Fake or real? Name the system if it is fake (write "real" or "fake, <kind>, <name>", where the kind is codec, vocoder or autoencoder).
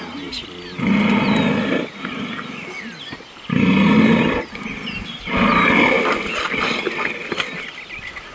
real